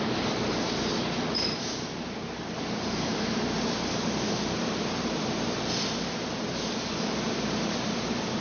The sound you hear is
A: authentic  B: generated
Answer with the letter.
A